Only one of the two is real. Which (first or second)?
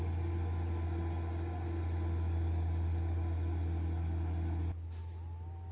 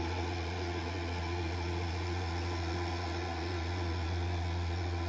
first